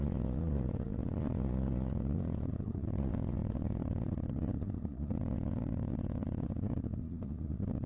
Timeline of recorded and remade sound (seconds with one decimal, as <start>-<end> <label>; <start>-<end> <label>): 0.0-7.9 remade

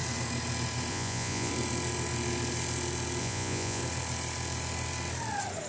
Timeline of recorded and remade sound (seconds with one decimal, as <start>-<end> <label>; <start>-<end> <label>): 0.0-0.9 recorded; 0.9-1.5 remade; 1.5-3.2 recorded; 3.2-3.8 remade; 3.8-5.7 recorded

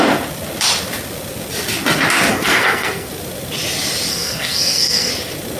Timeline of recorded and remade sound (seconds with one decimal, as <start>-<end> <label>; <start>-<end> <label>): 0.0-2.3 recorded; 2.3-3.1 remade; 3.1-4.1 recorded; 4.1-5.1 remade; 5.1-5.6 recorded